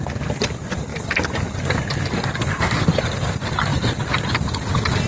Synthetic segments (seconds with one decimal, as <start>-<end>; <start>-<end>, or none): none